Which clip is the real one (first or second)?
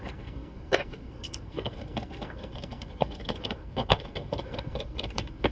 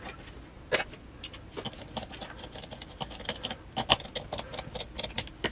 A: second